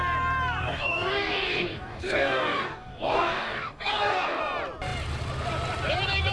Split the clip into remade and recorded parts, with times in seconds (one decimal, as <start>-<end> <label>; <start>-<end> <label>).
0.0-0.6 recorded; 0.6-4.4 remade; 4.4-6.3 recorded